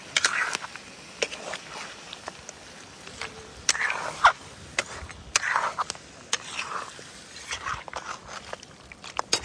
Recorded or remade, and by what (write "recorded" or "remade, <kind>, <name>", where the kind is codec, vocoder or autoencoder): recorded